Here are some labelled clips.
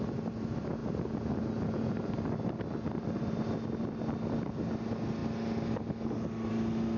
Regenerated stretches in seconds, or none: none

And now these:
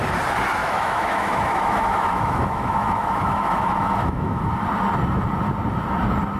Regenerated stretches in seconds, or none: 0.6-4.4 (autoencoder, DAC-VAE)

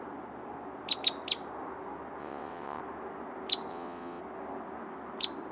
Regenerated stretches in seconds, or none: 2.2-2.8 (vocoder, WaveNeXt); 3.7-4.2

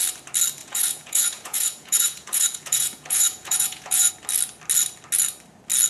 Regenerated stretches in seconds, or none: 0.6-4.1 (vocoder, Vocos)

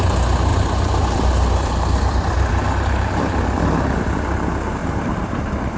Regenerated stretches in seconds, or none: 0.5-4.0 (vocoder, BigVGAN v2); 4.8-5.8

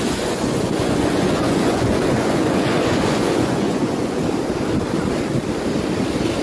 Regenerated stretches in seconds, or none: 0.0-4.2 (vocoder, Vocos)

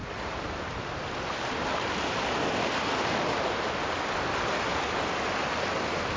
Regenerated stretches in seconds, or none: none

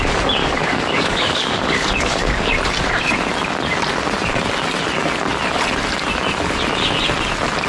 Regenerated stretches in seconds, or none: 0.4-2.5 (codec, DAC)